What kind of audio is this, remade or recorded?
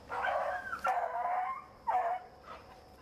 recorded